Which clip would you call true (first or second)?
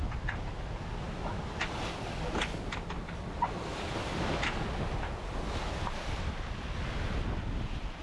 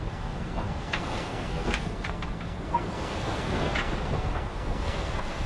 first